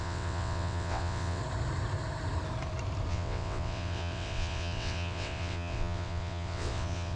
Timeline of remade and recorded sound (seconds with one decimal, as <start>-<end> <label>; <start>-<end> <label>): 0.0-1.4 remade; 1.4-3.1 recorded; 3.1-7.2 remade